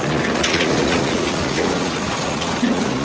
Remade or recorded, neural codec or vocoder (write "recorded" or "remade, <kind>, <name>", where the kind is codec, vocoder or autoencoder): remade, vocoder, Vocos